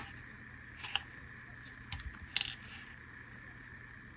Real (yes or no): yes